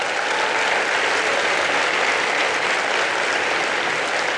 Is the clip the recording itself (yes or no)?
yes